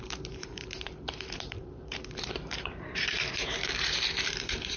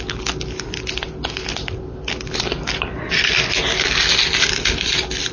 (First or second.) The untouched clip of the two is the second